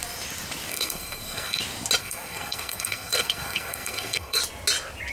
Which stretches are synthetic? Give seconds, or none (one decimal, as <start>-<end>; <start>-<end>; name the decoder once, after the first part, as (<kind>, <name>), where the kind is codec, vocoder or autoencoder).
0.7-1.6 (codec, SNAC); 2.0-4.4